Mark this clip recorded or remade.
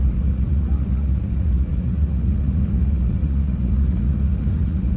remade